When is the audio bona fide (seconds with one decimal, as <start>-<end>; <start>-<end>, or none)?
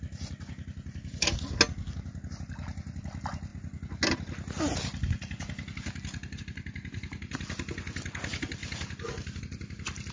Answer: 0.0-10.1